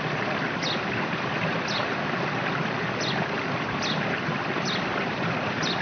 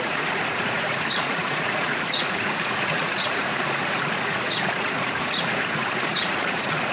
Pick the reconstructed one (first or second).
second